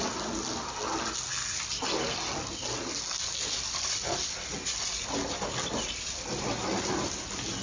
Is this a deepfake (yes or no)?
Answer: no